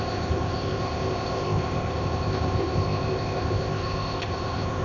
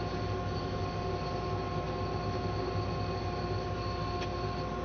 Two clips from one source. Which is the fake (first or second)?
first